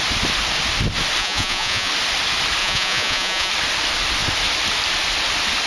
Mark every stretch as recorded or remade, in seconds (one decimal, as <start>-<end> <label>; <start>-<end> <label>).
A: 0.0-1.2 recorded; 1.2-1.9 remade; 1.9-2.6 recorded; 2.6-3.5 remade; 3.5-5.7 recorded